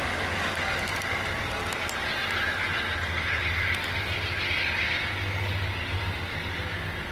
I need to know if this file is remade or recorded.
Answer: recorded